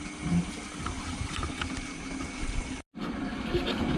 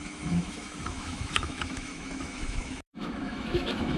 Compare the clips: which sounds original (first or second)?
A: first